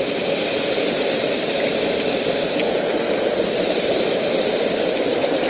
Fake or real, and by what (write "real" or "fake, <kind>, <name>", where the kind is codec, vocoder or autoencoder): real